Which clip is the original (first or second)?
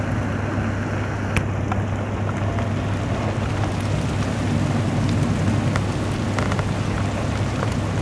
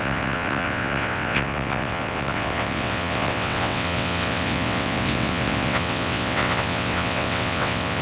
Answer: first